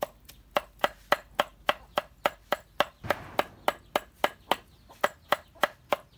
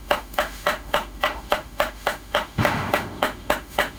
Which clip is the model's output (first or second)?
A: second